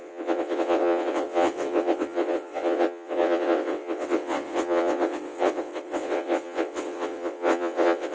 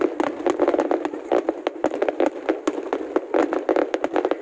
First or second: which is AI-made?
first